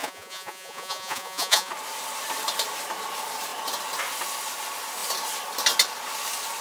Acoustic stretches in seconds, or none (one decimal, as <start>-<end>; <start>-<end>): 1.7-6.6